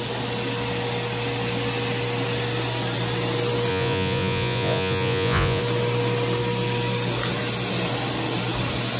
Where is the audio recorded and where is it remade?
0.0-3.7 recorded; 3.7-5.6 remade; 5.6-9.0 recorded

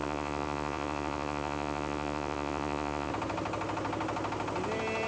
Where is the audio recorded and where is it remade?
0.0-3.1 remade; 3.1-5.1 recorded

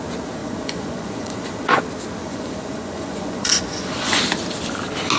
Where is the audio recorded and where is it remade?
0.0-0.4 recorded; 0.4-1.8 remade; 1.8-2.2 recorded; 2.2-4.2 remade; 4.2-5.2 recorded